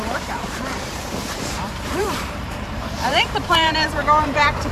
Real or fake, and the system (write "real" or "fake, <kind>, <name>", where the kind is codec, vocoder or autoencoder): fake, vocoder, BigVGAN v2